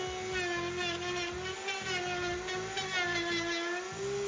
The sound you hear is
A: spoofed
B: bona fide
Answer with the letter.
B